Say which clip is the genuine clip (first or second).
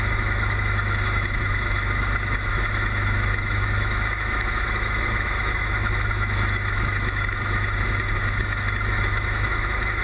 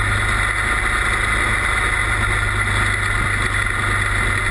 second